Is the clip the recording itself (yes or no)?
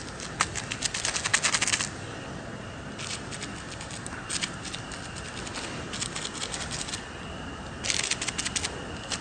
yes